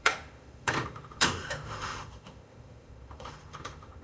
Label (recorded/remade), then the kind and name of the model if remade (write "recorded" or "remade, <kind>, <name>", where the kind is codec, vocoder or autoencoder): remade, autoencoder, DAC-VAE